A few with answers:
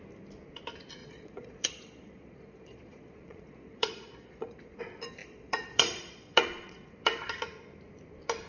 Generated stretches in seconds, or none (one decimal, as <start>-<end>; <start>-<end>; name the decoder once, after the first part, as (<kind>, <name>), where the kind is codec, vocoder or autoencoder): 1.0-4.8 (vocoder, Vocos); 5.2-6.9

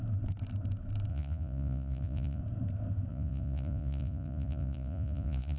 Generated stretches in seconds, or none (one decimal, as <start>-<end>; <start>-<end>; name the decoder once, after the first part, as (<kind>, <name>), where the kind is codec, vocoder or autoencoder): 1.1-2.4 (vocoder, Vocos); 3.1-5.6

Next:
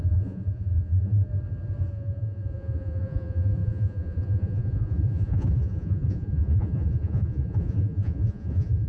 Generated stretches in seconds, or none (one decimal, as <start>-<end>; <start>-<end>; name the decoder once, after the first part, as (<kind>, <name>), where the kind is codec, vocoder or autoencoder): 0.0-1.3 (vocoder, Vocos); 1.9-8.9

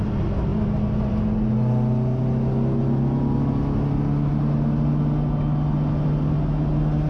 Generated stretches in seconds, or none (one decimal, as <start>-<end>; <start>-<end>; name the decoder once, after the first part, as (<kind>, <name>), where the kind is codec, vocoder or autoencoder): none

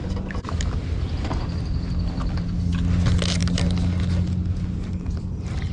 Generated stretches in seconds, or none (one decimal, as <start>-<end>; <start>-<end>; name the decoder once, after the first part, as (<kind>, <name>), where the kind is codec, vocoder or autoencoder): none

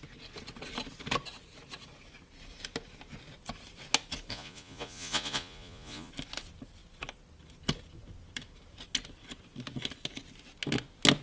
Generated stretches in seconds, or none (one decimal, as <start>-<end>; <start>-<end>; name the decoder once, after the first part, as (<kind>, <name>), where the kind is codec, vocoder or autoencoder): 4.3-6.1 (vocoder, Vocos)

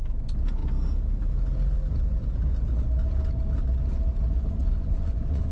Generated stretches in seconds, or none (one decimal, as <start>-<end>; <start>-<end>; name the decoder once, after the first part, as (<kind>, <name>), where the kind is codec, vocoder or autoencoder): 4.6-5.5 (vocoder, Vocos)